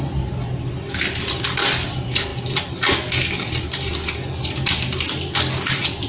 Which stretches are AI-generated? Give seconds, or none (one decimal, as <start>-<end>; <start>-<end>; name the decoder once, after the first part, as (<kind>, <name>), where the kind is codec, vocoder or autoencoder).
none